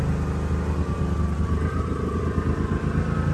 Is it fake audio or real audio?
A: real